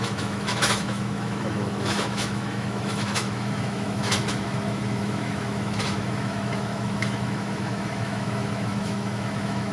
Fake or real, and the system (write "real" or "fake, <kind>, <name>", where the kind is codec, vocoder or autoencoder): fake, autoencoder, DAC-VAE